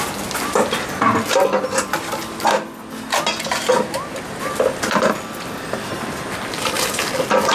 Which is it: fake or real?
real